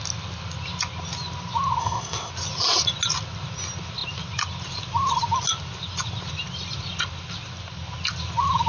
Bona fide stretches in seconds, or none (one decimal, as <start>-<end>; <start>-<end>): 0.0-1.8; 2.3-8.7